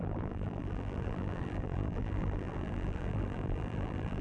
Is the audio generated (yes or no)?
yes